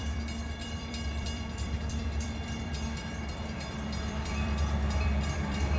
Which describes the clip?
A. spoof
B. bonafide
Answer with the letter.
A